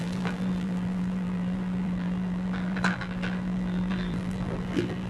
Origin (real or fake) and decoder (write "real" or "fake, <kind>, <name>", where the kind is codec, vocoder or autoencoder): fake, vocoder, BigVGAN v2